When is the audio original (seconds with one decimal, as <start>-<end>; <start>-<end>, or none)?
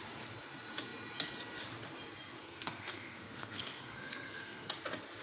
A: 0.0-2.4; 4.7-5.2